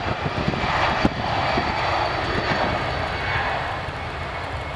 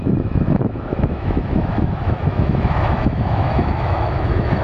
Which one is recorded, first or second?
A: first